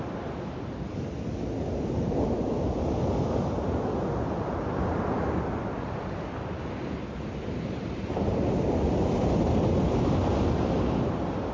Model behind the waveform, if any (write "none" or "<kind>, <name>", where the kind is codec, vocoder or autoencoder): none